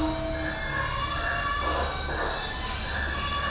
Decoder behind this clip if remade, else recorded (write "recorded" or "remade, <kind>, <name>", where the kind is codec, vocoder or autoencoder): recorded